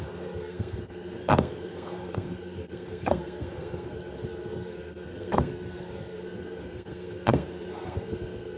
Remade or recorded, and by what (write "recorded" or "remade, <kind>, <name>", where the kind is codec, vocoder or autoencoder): remade, codec, SNAC